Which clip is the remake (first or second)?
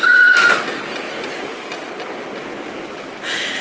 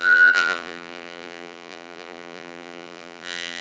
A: second